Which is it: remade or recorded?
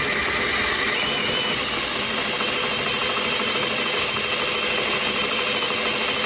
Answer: recorded